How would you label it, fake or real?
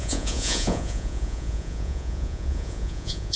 fake